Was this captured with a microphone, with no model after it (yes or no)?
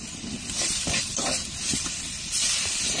no